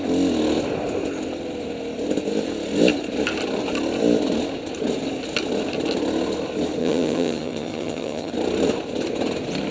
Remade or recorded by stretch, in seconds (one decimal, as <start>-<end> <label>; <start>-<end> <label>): 0.0-6.8 recorded; 6.8-8.3 remade; 8.3-9.7 recorded